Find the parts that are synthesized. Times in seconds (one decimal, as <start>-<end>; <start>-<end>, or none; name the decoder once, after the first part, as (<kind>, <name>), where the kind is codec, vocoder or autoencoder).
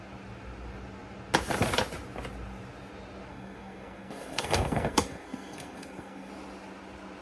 3.3-6.3 (codec, SNAC)